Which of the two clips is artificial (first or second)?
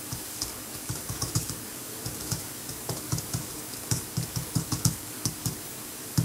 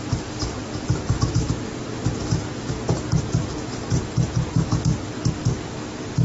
first